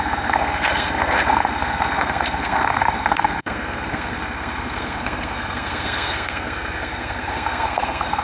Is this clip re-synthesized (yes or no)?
yes